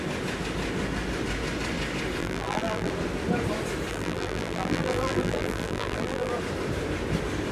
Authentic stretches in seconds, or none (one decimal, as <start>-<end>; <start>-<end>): 0.0-2.2; 2.9-3.9; 6.3-7.5